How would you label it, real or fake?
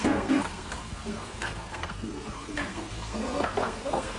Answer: fake